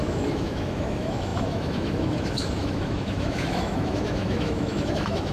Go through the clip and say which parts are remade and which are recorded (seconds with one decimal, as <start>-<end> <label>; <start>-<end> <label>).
0.0-5.3 remade